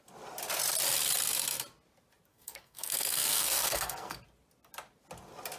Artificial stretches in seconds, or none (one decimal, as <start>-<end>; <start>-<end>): 2.3-4.2